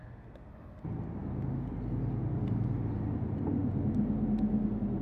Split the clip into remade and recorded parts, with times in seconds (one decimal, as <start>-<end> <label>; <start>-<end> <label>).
0.0-5.0 recorded